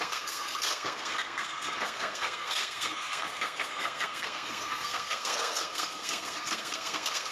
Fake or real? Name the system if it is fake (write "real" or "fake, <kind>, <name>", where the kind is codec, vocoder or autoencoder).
fake, codec, SNAC